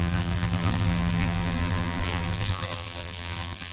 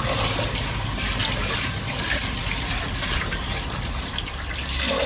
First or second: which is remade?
first